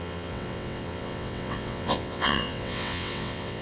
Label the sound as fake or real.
fake